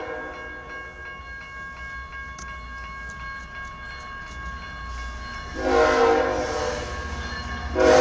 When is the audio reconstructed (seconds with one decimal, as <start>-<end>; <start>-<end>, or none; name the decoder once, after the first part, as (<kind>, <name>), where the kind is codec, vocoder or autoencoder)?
none